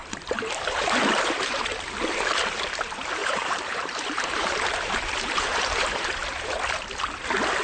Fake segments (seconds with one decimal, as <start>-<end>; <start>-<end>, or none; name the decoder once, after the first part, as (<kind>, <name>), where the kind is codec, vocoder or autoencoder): 0.0-1.9 (vocoder, BigVGAN v2); 3.2-6.6